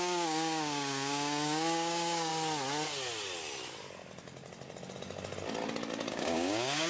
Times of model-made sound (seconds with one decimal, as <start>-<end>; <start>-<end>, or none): 0.0-2.3; 6.1-6.9

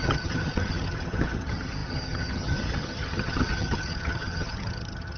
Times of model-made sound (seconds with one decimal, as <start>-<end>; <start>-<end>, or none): 0.0-5.2